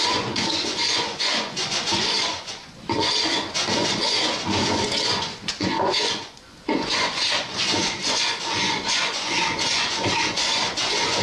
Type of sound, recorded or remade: remade